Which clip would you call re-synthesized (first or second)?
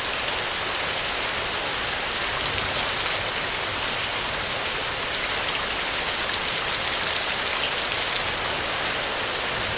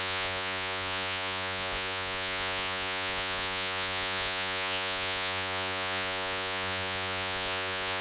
second